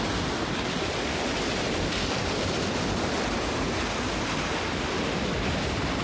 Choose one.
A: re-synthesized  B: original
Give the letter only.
B